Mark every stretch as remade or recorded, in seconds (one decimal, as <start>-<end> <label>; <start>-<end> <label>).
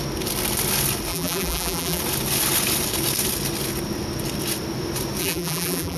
0.0-1.1 recorded; 1.1-2.0 remade; 2.0-5.2 recorded; 5.2-6.0 remade